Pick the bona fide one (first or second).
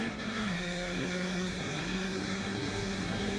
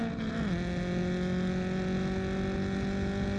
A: second